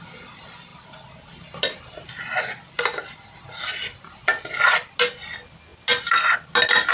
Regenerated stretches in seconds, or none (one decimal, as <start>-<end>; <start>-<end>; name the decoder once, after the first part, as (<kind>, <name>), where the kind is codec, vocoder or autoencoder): none